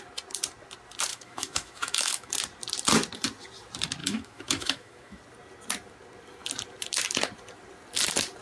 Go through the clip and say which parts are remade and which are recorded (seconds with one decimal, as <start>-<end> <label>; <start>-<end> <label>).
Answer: 0.0-1.1 recorded; 1.1-2.3 remade; 2.3-4.0 recorded; 4.0-5.2 remade; 5.2-8.4 recorded

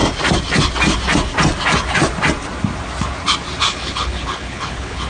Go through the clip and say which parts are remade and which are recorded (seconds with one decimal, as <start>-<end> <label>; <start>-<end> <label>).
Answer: 0.0-3.7 recorded; 3.7-5.1 remade

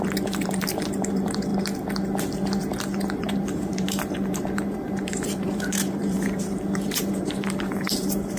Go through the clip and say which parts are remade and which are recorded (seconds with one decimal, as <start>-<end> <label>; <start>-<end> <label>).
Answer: 0.0-1.5 remade; 1.5-3.2 recorded; 3.2-8.4 remade

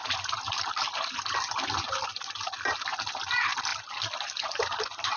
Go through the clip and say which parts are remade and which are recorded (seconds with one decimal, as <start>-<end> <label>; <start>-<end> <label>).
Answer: 0.0-3.1 remade; 3.1-3.7 recorded; 3.7-5.2 remade

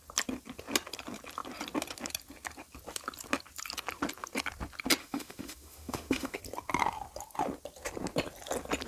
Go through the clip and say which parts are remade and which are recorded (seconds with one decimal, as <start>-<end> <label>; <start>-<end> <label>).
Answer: 0.0-5.0 recorded; 5.0-6.4 remade; 6.4-8.9 recorded

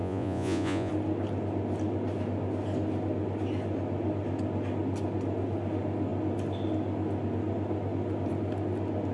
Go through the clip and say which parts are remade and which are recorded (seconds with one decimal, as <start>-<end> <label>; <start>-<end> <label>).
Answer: 0.0-0.9 remade; 0.9-9.1 recorded